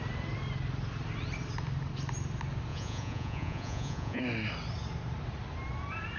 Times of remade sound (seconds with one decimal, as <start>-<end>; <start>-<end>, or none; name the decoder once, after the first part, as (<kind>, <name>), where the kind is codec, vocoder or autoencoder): 2.7-4.2 (vocoder, Vocos)